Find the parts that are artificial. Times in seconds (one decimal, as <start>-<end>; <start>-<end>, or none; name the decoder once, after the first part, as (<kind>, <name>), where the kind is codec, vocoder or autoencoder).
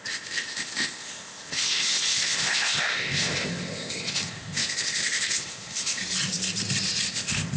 0.0-6.0 (codec, ZipCodec); 7.1-7.6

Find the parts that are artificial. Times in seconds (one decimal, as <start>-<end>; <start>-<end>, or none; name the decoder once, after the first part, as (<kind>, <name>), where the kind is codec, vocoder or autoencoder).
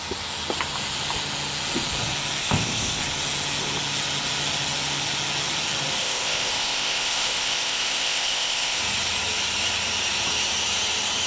2.4-3.0 (codec, ZipCodec); 6.0-8.8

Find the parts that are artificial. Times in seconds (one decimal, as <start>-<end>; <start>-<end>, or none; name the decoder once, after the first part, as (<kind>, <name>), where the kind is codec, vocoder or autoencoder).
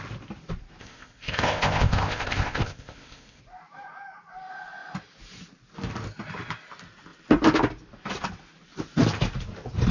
0.8-3.4 (codec, ZipCodec)